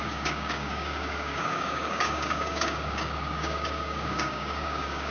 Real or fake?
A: fake